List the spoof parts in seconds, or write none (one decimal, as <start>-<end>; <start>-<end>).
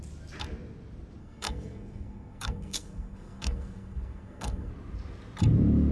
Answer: 1.2-4.7